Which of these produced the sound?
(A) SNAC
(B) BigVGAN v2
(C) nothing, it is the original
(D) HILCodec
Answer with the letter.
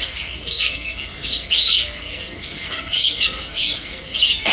A